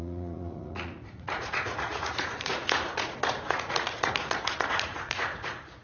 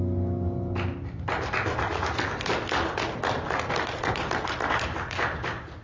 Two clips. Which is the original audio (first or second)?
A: second